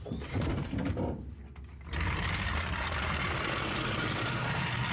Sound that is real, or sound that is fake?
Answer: real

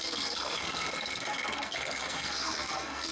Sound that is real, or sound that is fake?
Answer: fake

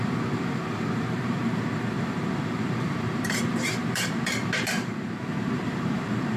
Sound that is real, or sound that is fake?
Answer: fake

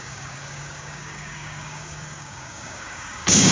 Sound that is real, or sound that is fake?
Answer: fake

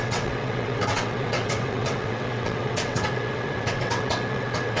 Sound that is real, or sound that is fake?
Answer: fake